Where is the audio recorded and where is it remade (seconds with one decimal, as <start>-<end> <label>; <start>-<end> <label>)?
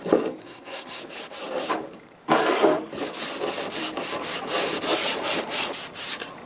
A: 0.0-0.4 recorded; 0.4-1.0 remade; 1.0-6.5 recorded